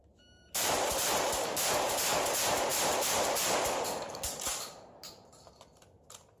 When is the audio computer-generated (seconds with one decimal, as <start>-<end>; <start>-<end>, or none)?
0.0-1.1; 2.7-5.1